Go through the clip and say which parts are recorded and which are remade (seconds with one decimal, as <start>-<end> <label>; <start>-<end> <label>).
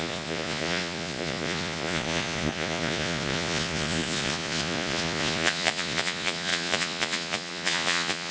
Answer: 0.0-8.3 remade